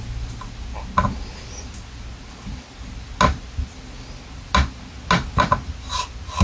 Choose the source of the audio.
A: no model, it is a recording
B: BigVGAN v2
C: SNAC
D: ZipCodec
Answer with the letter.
A